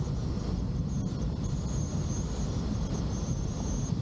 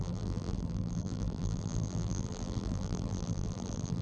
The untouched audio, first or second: first